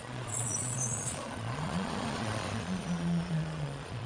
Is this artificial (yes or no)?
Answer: yes